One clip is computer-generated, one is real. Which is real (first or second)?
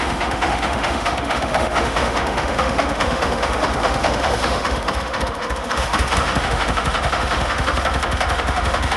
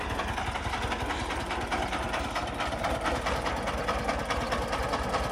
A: second